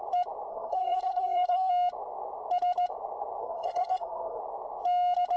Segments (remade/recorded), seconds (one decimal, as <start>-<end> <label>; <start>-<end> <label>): 0.0-0.5 recorded; 0.5-1.7 remade; 1.7-3.4 recorded; 3.4-4.4 remade; 4.4-5.4 recorded